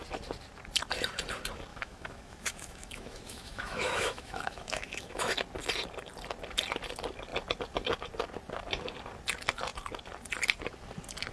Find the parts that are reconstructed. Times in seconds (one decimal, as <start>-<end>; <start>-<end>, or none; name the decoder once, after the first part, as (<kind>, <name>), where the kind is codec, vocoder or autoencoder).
1.7-5.3 (autoencoder, DAC-VAE)

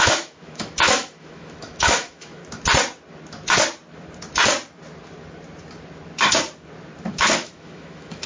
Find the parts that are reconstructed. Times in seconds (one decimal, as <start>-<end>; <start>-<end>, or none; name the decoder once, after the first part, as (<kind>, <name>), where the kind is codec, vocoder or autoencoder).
0.0-2.4 (autoencoder, DAC-VAE); 7.1-8.3

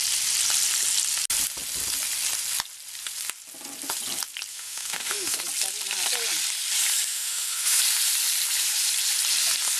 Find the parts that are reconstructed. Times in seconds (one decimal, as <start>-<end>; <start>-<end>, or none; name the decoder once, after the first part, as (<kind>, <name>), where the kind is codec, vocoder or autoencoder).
4.5-5.4 (autoencoder, DAC-VAE); 7.1-7.8

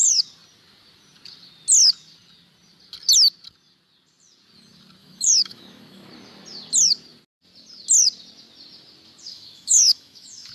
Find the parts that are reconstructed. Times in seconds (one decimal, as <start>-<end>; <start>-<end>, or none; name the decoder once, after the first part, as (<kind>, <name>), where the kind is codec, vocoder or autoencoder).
5.0-6.1 (autoencoder, DAC-VAE); 9.3-10.5

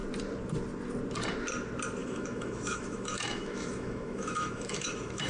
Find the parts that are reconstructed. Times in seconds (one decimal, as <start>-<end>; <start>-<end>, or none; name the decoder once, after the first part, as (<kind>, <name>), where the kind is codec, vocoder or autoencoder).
2.0-5.3 (autoencoder, DAC-VAE)